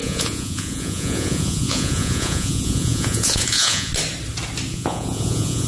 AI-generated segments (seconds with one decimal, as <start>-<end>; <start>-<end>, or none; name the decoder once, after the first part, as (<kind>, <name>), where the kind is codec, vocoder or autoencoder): 0.0-3.9 (vocoder, Vocos); 4.7-5.7